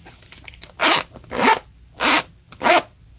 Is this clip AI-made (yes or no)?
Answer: no